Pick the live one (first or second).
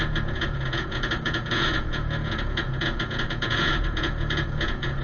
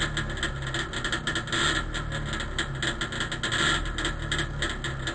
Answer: second